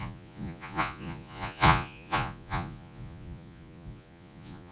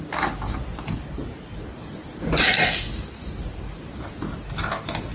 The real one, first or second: second